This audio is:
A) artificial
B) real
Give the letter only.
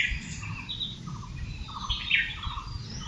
B